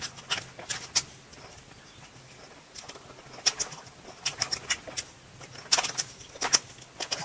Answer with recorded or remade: recorded